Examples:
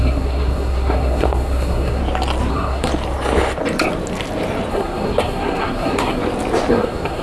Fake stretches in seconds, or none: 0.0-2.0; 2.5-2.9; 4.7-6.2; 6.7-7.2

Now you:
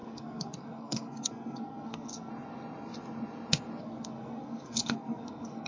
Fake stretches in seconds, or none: 0.0-2.3; 3.8-5.7

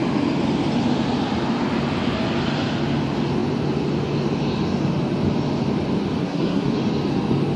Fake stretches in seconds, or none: 6.2-6.7

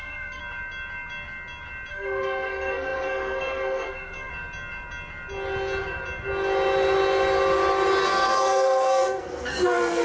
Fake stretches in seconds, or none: 0.0-0.4; 1.9-4.3; 8.0-10.0

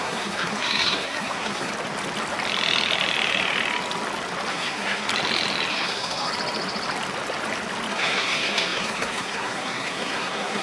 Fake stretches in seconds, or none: 0.0-1.7; 4.5-5.1; 5.7-6.3; 7.9-10.6